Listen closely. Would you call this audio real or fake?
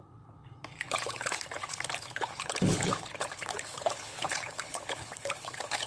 fake